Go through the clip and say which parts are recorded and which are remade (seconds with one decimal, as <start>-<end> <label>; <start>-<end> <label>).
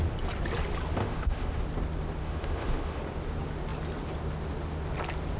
0.0-1.0 recorded; 1.0-1.6 remade; 1.6-2.2 recorded; 2.2-3.0 remade; 3.0-5.4 recorded